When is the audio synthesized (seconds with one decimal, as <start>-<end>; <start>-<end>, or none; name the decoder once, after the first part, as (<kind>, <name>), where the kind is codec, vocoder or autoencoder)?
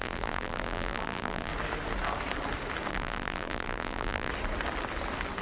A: 0.0-1.5 (vocoder, BigVGAN v2); 2.9-4.3